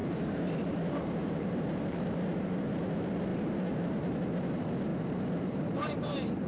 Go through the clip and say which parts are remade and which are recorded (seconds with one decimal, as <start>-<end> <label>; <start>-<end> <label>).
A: 0.0-6.5 remade